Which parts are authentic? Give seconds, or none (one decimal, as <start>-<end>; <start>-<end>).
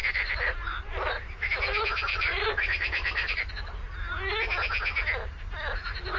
1.5-2.1; 3.5-6.2